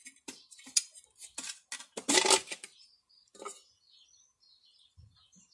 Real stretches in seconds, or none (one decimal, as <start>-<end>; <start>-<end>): 0.0-5.5